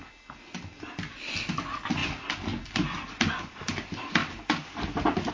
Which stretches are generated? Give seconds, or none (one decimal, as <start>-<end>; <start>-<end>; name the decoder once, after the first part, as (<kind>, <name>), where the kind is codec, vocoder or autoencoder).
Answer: none